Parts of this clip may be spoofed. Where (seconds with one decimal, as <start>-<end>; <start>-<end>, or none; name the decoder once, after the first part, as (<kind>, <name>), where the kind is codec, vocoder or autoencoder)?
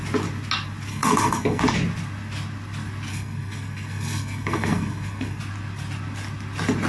0.9-1.6 (codec, SNAC); 3.1-5.4